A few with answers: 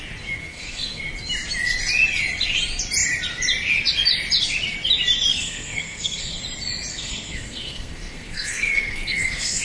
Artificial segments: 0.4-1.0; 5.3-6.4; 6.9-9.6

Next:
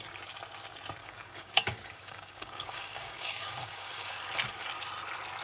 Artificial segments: 1.0-4.2

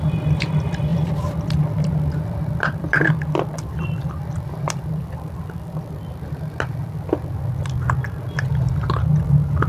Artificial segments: 0.9-5.8

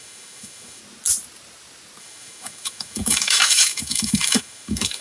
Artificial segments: 0.0-0.8; 2.0-5.0

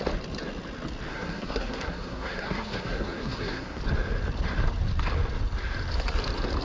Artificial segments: 1.1-3.8

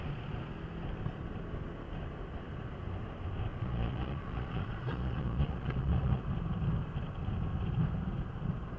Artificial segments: 3.5-6.2

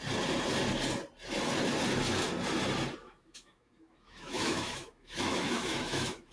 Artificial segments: 3.0-6.3

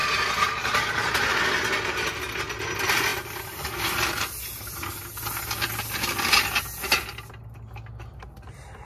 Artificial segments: none